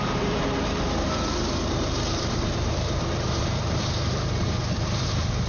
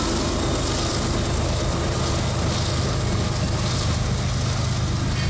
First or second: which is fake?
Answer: first